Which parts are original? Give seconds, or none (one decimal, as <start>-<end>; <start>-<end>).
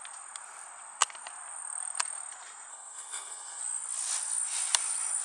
0.0-2.7; 3.6-5.2